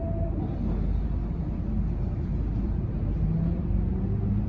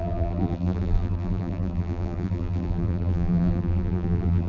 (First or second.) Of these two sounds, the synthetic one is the second